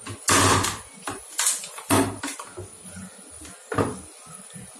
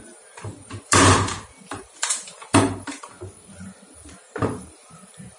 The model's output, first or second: second